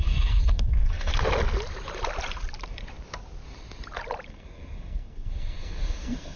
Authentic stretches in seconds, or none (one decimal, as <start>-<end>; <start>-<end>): 1.1-4.3